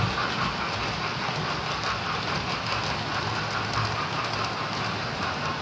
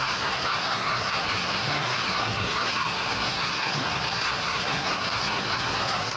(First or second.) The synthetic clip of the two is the second